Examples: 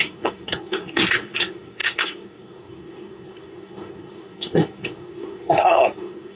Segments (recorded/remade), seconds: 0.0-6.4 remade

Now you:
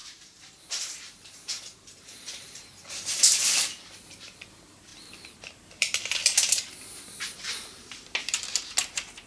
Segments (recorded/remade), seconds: 0.0-9.3 remade

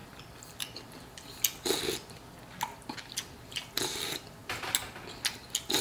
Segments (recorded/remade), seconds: 0.0-5.8 recorded

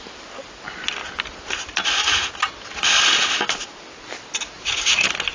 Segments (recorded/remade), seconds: 0.0-5.3 recorded

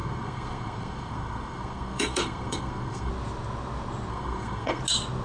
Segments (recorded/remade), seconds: 0.0-3.1 remade; 3.1-4.1 recorded; 4.1-4.8 remade; 4.8-5.2 recorded